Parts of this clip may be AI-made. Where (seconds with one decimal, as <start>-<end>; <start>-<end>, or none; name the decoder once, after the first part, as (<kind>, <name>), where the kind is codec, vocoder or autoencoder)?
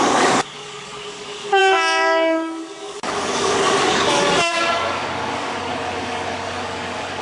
0.0-7.2 (codec, DAC)